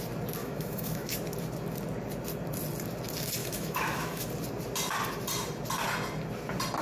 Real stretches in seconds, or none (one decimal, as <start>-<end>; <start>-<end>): 0.0-0.4; 1.1-3.4; 4.3-6.8